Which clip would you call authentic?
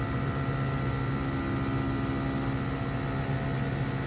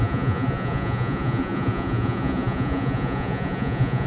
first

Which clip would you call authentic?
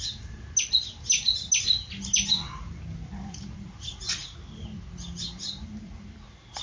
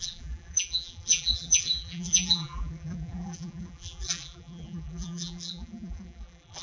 first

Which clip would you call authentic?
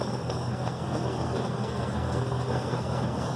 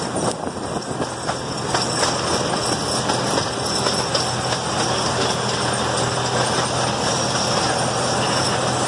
second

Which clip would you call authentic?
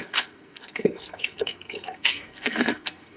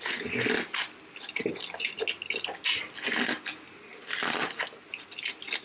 second